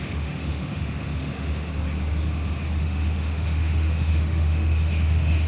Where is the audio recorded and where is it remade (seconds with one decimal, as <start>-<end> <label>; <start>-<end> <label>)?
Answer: 0.0-1.7 remade; 1.7-2.8 recorded; 2.8-5.5 remade